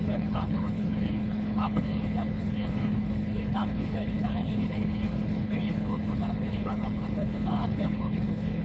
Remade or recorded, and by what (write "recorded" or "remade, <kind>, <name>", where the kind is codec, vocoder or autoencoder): remade, codec, HILCodec